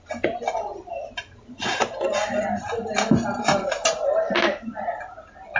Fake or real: real